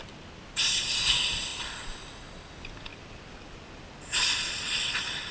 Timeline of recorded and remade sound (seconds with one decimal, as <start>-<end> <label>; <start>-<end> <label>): 0.0-5.3 recorded